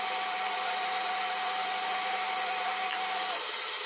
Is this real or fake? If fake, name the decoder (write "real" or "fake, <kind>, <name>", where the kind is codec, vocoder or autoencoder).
real